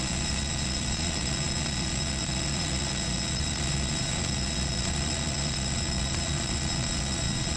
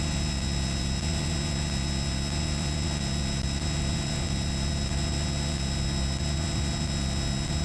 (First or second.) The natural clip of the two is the second